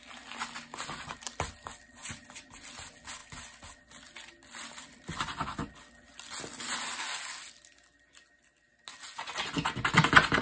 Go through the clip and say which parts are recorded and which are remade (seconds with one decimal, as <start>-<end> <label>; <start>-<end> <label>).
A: 0.0-10.4 recorded